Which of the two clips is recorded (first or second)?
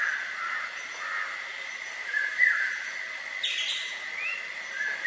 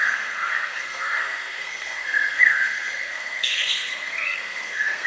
first